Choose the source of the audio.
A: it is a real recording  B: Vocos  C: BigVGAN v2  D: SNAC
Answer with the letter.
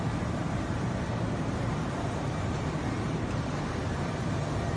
C